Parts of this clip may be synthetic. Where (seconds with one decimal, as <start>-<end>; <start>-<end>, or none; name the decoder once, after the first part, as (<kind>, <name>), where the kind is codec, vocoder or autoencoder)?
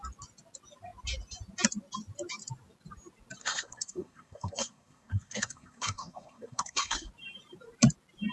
3.4-7.1 (codec, SNAC)